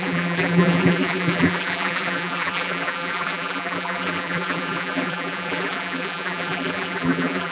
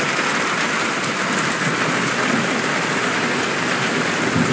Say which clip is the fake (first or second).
first